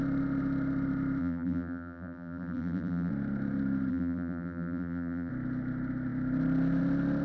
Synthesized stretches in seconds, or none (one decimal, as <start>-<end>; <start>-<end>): 1.2-3.1; 3.9-5.3